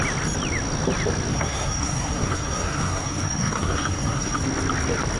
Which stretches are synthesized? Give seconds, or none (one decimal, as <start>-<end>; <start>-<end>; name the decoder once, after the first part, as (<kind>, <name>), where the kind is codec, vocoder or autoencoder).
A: 1.3-4.4 (codec, SNAC)